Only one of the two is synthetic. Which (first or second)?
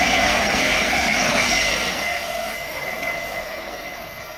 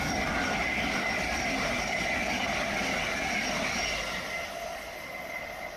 first